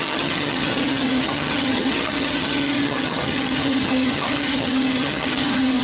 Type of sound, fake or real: fake